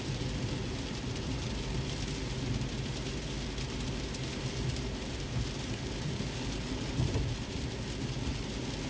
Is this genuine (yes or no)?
yes